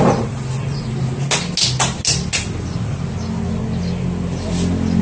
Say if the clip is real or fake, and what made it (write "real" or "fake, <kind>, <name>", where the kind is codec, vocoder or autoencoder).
real